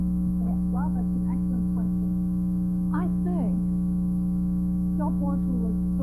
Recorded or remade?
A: remade